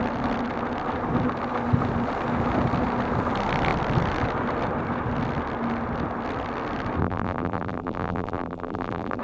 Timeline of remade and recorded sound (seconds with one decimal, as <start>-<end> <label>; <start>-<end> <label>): 0.0-7.0 recorded; 7.0-9.2 remade